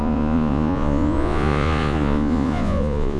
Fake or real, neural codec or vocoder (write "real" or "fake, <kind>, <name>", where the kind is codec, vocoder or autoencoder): fake, vocoder, Vocos